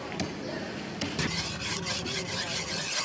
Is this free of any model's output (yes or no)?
yes